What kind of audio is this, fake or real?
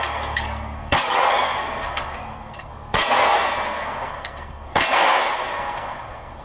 fake